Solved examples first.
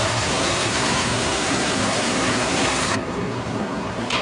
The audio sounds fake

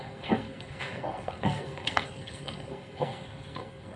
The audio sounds fake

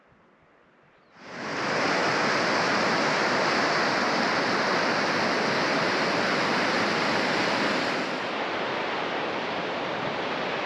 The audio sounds real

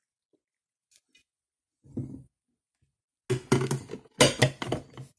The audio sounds real